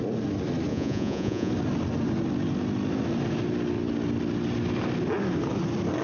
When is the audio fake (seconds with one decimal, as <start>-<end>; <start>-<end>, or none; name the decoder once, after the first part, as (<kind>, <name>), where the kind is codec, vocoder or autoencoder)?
0.7-1.5 (vocoder, Vocos)